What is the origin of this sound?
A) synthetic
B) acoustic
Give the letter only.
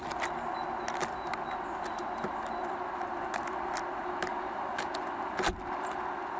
B